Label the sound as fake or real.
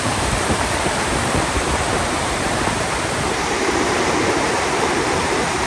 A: fake